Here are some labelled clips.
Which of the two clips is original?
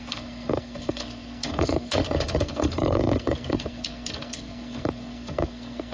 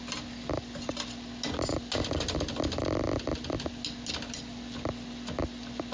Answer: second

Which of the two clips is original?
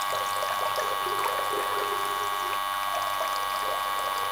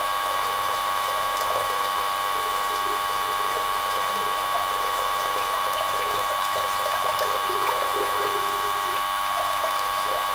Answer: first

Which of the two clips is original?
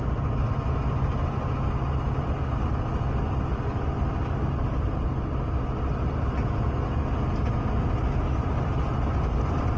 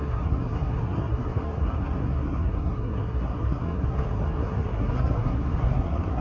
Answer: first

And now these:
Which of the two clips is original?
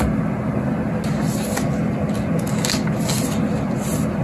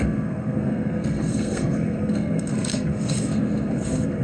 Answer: first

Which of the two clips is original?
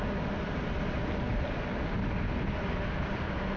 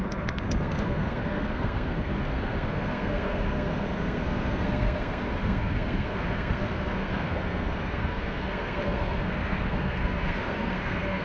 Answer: first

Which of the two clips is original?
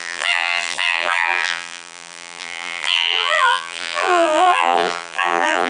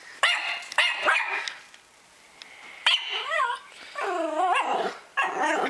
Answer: second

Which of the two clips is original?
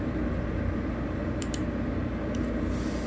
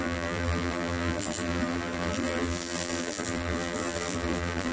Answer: first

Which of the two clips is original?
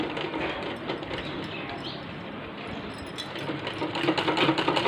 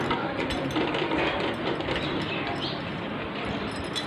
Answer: second